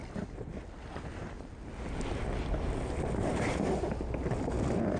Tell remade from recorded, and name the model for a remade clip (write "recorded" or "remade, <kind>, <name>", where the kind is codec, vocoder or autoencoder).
recorded